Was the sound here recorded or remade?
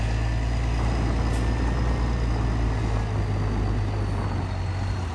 recorded